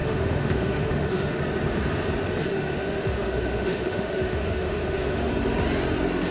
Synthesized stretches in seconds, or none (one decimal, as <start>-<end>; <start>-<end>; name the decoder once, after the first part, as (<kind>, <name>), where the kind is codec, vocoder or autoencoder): 0.0-1.4 (autoencoder, DAC-VAE); 2.5-5.3